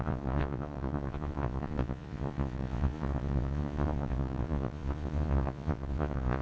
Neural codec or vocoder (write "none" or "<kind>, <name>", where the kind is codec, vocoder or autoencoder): vocoder, Vocos